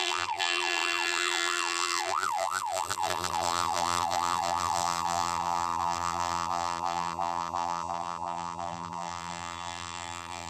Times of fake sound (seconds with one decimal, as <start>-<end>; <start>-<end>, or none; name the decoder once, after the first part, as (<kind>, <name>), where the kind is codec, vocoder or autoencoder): 0.0-10.5 (vocoder, BigVGAN v2)

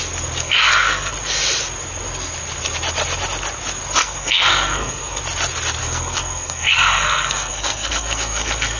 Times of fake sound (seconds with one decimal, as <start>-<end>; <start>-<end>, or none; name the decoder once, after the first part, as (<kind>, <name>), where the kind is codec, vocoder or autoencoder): 0.4-1.1 (codec, SNAC); 4.0-5.2; 5.8-8.8

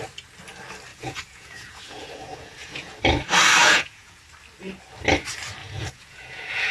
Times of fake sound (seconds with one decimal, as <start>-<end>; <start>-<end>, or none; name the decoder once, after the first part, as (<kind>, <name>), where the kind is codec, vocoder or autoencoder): 0.9-3.0 (vocoder, Vocos); 3.6-4.2; 5.6-6.7

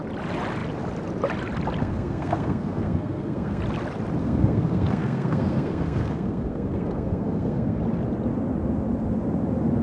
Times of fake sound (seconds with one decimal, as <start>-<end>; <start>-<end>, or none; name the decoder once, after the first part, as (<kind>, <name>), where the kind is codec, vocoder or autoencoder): 1.8-3.6 (codec, SNAC); 4.2-7.8